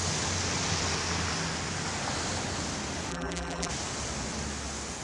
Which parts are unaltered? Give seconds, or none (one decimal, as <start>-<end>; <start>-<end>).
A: 0.0-3.1; 3.7-5.0